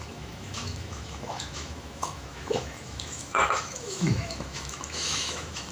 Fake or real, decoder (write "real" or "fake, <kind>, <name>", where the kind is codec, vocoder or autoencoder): fake, autoencoder, DAC-VAE